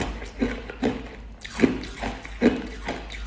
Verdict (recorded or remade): recorded